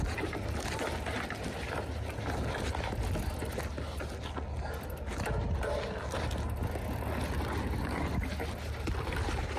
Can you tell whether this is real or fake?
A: real